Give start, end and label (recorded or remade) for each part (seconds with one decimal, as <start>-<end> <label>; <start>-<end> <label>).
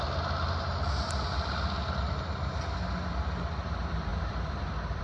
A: 0.0-4.1 recorded; 4.1-5.0 remade